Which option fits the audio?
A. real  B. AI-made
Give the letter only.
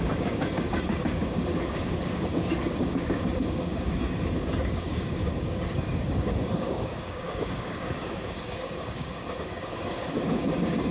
B